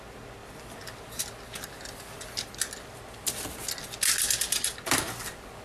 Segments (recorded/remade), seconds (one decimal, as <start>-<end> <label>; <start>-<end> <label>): 0.0-5.6 recorded